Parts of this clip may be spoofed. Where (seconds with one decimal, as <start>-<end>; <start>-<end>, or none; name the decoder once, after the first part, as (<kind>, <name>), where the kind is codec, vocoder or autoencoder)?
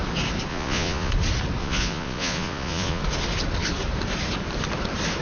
0.5-1.1 (vocoder, Vocos); 1.6-3.0